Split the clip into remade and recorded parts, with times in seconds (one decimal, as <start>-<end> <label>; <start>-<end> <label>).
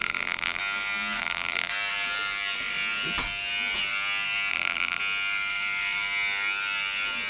0.0-0.6 remade; 0.6-1.2 recorded; 1.2-1.7 remade; 1.7-4.5 recorded; 4.5-5.0 remade; 5.0-7.3 recorded